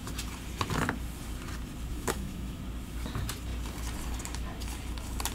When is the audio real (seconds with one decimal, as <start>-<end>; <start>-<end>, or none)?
0.0-1.9; 2.6-5.3